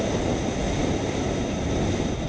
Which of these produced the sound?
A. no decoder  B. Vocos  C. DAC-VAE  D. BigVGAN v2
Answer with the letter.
A